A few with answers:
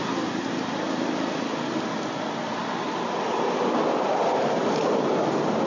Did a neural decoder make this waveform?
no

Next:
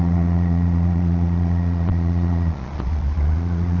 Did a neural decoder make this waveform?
yes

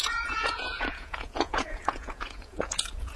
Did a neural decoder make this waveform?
yes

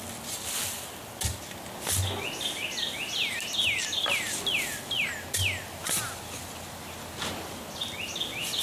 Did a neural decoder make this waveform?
no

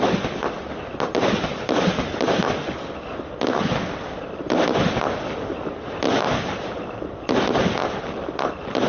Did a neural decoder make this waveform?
no